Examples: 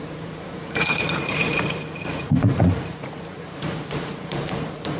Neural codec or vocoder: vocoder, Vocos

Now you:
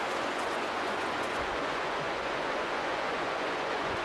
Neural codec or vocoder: vocoder, Vocos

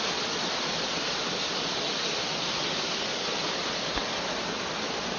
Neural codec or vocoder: none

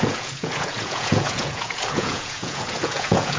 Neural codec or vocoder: vocoder, Vocos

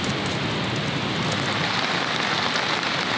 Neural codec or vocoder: none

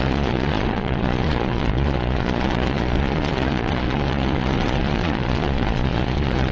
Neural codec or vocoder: vocoder, Vocos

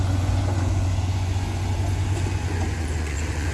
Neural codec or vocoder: vocoder, Vocos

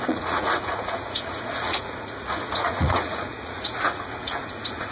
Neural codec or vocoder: vocoder, Vocos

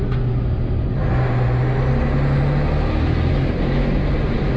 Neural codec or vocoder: none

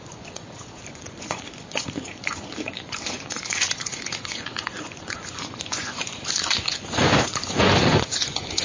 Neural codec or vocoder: vocoder, Vocos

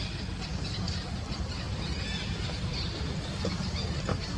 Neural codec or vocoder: none